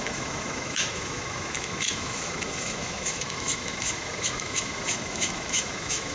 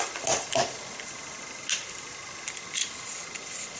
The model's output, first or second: first